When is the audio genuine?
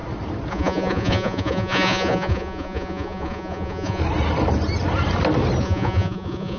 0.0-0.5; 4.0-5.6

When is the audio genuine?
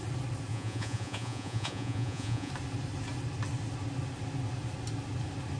0.0-0.5; 2.5-5.6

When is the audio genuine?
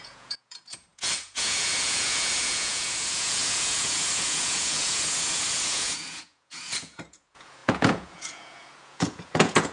none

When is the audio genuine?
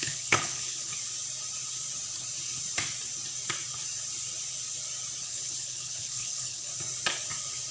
0.9-5.2; 6.7-7.7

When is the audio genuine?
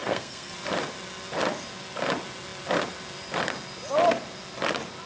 0.5-5.1